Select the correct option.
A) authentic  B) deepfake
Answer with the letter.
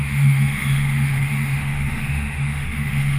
B